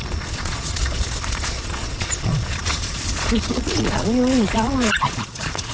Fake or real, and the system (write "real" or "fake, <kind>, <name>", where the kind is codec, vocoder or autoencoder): fake, vocoder, Vocos